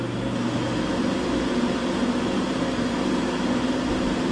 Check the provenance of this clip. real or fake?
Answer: real